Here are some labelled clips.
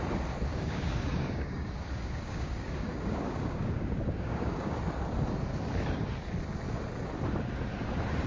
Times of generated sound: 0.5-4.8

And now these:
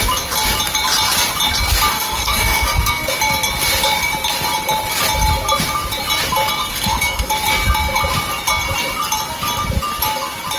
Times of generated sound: 1.9-3.1; 6.7-7.3

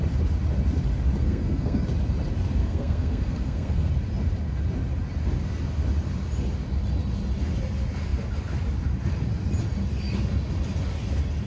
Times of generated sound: 1.2-1.8; 2.6-3.9